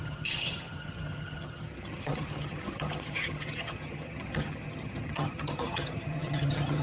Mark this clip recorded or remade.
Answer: remade